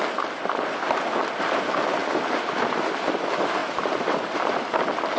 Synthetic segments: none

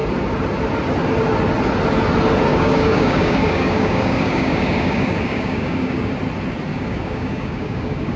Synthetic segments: 2.5-6.1 (codec, DAC); 6.7-8.2

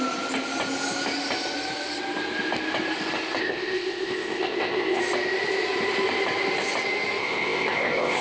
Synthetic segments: 3.4-5.0 (codec, ZipCodec); 7.2-8.2

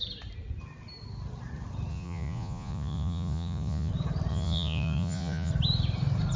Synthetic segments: 1.9-3.9 (vocoder, Vocos); 4.3-5.5

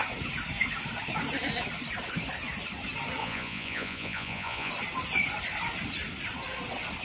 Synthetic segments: 3.2-4.7 (vocoder, Vocos)

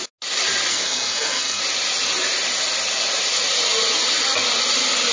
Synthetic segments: 0.7-1.6 (codec, SNAC)

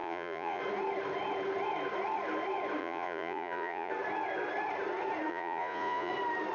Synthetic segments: 0.0-0.6 (vocoder, Vocos); 2.8-3.9; 5.3-6.1